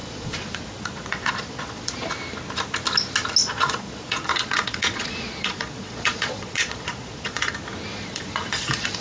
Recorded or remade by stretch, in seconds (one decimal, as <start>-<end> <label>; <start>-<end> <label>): 0.0-2.1 remade; 2.1-3.4 recorded; 3.4-7.5 remade; 7.5-7.9 recorded; 7.9-9.0 remade